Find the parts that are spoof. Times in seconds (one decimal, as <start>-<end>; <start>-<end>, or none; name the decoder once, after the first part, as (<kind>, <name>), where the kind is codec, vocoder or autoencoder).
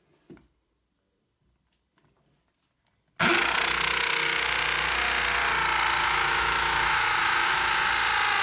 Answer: 6.0-7.9 (autoencoder, DAC-VAE)